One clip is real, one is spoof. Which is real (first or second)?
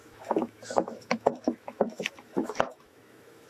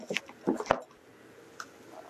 second